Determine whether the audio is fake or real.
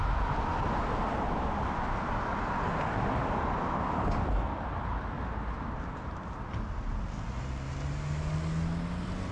real